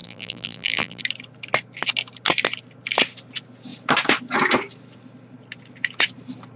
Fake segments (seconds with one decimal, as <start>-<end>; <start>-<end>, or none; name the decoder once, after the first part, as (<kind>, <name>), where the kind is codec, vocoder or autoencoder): 0.0-1.0 (vocoder, BigVGAN v2)